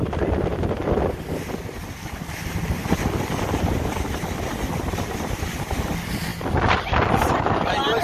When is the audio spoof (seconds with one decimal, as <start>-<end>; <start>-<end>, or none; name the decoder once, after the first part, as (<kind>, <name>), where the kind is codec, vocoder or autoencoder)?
none